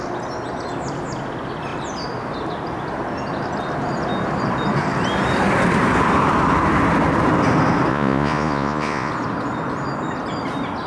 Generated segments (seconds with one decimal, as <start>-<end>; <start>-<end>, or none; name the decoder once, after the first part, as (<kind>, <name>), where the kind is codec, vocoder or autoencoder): 7.9-9.1 (vocoder, Vocos)